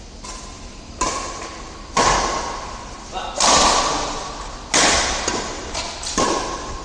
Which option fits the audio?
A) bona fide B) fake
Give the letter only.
A